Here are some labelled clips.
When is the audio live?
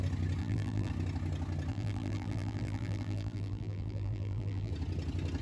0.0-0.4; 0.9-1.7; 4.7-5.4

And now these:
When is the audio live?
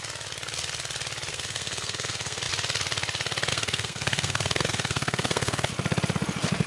0.0-1.3; 2.4-3.5; 5.7-6.7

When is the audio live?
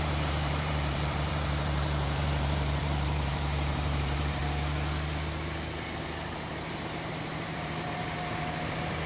4.4-6.5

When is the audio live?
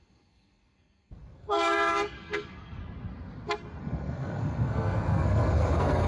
2.8-3.8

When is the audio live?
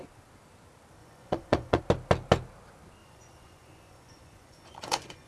0.0-1.0; 1.8-3.0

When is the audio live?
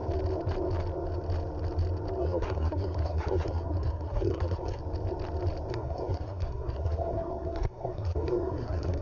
0.0-2.2; 4.8-5.7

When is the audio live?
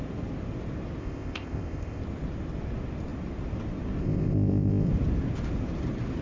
0.0-1.0; 2.0-4.0; 4.9-6.2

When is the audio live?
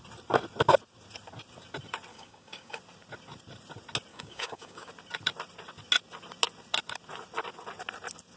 0.0-2.1; 2.8-4.1; 4.9-8.4